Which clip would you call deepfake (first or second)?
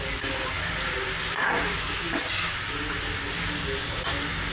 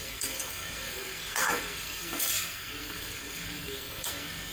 second